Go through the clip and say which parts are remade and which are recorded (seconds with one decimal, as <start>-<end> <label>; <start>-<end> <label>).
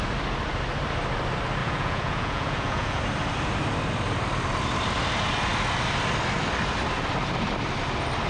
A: 0.0-1.6 recorded; 1.6-3.0 remade; 3.0-8.3 recorded